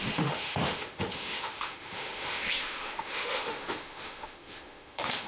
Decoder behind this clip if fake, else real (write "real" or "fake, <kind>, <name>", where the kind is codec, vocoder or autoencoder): fake, autoencoder, DAC-VAE